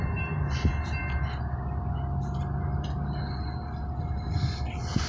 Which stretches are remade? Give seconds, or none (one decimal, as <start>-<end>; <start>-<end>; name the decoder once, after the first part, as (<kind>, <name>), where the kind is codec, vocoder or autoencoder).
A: none

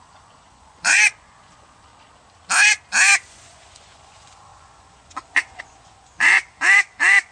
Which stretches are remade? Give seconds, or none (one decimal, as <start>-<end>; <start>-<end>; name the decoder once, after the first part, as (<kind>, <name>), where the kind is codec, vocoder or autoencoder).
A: 0.0-1.9 (vocoder, Vocos); 3.3-7.3

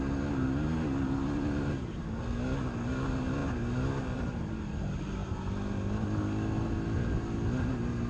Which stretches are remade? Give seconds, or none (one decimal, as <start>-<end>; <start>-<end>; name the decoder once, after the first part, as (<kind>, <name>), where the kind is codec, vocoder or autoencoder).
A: none

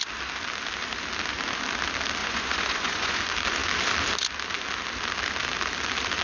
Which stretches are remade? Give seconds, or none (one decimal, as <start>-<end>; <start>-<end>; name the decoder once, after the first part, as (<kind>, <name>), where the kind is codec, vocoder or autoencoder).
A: 2.2-3.2 (vocoder, Vocos)

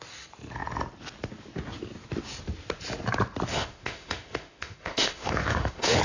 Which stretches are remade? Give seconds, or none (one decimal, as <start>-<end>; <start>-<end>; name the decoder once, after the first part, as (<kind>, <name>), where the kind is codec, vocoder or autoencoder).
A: 3.5-6.0 (autoencoder, DAC-VAE)

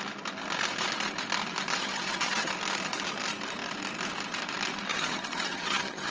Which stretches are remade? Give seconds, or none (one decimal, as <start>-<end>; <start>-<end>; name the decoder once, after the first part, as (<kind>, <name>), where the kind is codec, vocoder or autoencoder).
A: 1.8-2.5 (vocoder, HiFi-GAN); 4.9-6.1

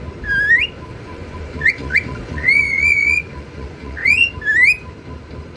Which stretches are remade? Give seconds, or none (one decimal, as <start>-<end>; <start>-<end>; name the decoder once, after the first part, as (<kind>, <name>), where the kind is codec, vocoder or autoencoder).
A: 0.9-4.3 (vocoder, Vocos)